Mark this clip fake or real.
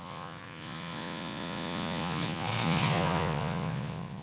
fake